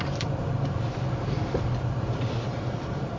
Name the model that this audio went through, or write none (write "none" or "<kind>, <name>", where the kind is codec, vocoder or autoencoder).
vocoder, BigVGAN v2